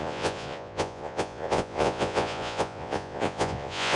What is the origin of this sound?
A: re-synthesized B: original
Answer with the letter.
A